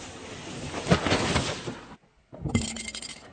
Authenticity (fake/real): real